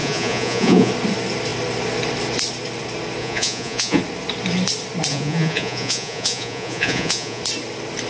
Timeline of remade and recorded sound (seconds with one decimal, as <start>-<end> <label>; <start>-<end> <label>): 0.0-0.9 remade; 0.9-3.2 recorded; 3.2-4.0 remade; 4.0-5.1 recorded; 5.1-7.4 remade; 7.4-8.1 recorded